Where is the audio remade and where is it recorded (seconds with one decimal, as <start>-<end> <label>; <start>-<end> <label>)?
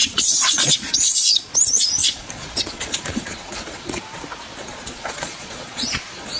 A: 0.0-1.5 remade; 1.5-2.0 recorded; 2.0-4.0 remade; 4.0-4.6 recorded; 4.6-6.4 remade